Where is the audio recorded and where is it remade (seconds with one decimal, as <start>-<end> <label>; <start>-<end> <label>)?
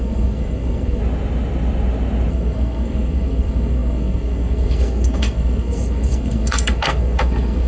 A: 0.0-1.0 remade; 1.0-2.3 recorded; 2.3-7.7 remade